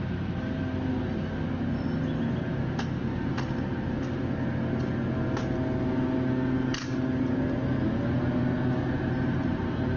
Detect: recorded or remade recorded